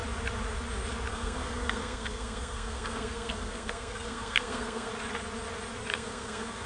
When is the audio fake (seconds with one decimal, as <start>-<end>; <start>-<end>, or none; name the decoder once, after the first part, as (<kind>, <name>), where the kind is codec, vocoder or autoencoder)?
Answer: 1.1-4.9 (codec, SNAC); 5.9-6.7